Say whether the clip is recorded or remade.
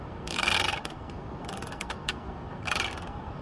remade